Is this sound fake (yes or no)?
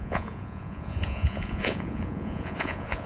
yes